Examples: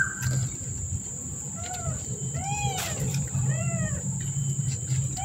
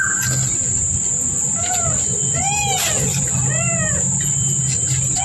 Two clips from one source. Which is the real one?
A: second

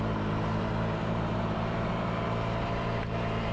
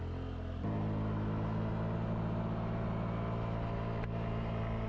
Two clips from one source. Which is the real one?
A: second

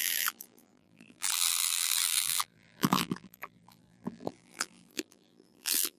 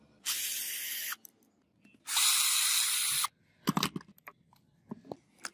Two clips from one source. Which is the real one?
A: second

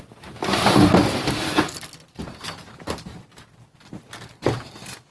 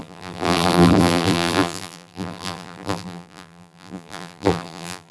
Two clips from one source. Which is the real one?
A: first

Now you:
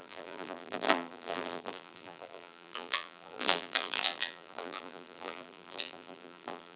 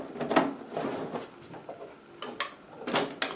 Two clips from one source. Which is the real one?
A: second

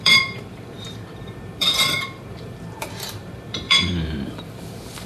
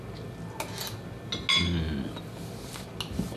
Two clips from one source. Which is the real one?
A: second